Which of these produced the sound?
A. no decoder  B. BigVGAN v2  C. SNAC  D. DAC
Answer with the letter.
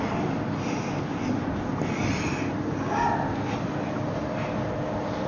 A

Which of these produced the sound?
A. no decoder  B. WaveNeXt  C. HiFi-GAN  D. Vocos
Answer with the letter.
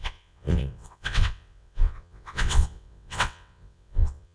B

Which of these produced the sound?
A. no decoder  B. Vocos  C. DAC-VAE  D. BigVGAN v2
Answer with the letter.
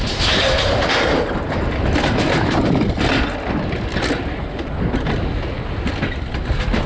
A